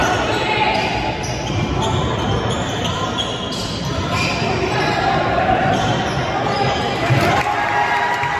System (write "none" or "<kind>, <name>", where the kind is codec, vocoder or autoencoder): none